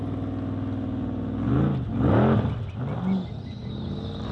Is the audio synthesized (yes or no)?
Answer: no